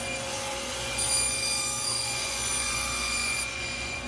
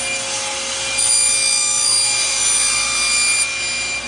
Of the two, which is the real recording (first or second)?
second